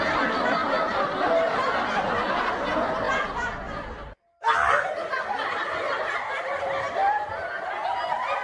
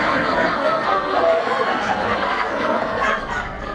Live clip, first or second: first